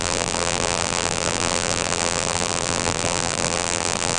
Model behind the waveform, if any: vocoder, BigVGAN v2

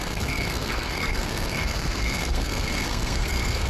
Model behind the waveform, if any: codec, SNAC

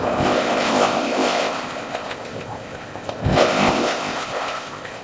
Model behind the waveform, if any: codec, ZipCodec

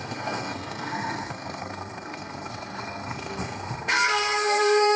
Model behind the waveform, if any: codec, SNAC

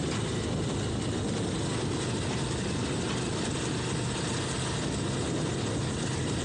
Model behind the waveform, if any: none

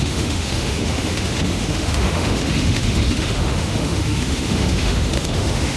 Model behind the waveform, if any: autoencoder, DAC-VAE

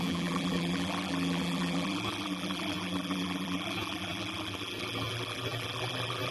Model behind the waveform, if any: vocoder, BigVGAN v2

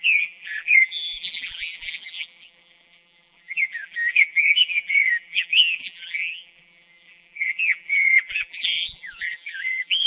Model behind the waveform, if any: vocoder, BigVGAN v2